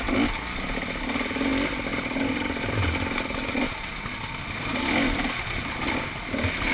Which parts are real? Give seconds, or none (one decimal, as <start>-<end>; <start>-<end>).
0.0-6.7